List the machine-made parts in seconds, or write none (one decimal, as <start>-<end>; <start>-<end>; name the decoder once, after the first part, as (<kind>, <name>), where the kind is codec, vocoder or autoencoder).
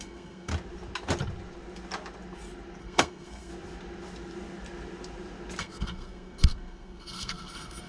0.0-0.5 (codec, SNAC); 2.8-3.5; 5.6-7.9